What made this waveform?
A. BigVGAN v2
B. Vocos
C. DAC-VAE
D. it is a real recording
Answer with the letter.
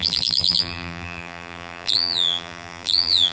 A